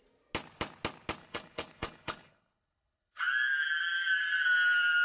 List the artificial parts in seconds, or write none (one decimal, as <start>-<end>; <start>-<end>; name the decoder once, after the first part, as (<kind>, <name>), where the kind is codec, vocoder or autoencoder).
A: 1.2-3.2 (codec, HILCodec)